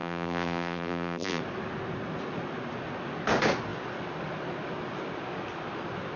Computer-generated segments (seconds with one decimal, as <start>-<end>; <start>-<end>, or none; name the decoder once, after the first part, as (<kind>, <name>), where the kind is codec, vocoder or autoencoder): 0.0-1.4 (vocoder, BigVGAN v2)